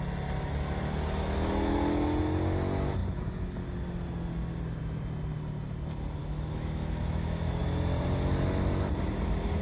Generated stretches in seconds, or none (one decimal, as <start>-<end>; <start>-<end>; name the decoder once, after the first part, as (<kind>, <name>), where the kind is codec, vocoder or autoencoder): 6.2-7.6 (autoencoder, DAC-VAE)

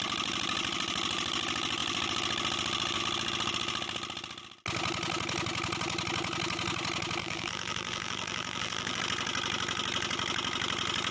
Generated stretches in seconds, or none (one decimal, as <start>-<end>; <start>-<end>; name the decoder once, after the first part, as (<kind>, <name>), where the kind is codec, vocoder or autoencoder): 7.2-9.0 (vocoder, BigVGAN v2)

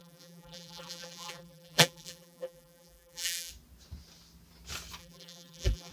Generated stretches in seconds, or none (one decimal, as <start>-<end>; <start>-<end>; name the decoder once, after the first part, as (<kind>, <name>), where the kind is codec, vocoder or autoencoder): 0.0-3.5 (vocoder, BigVGAN v2); 5.0-5.9